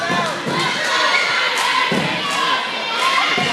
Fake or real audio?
real